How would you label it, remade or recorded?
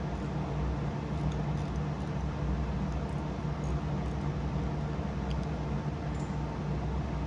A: recorded